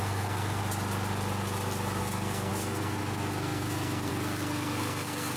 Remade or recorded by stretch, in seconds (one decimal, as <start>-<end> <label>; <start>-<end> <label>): 0.0-0.6 remade; 0.6-2.0 recorded; 2.0-5.4 remade